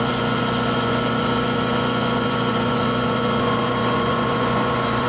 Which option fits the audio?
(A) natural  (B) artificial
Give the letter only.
B